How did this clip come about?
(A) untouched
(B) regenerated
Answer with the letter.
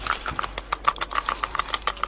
A